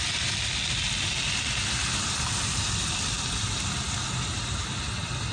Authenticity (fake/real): real